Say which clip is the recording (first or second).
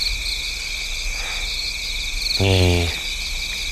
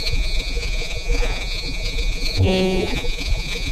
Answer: first